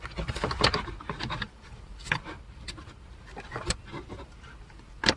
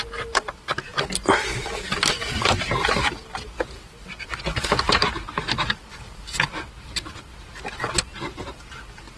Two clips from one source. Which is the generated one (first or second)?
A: first